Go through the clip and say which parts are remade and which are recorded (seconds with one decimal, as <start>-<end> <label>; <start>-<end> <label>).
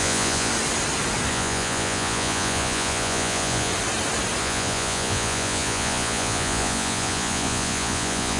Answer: 0.0-0.5 remade; 0.5-1.3 recorded; 1.3-3.7 remade; 3.7-4.4 recorded; 4.4-8.4 remade